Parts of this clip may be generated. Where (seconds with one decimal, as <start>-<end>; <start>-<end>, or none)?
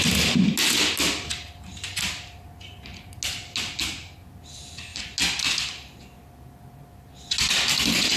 none